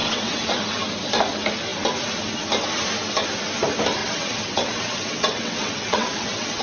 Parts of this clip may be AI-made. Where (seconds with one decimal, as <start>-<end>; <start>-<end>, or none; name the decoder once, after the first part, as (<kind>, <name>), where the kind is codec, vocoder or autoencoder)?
0.0-0.5 (vocoder, WaveNeXt); 4.0-6.6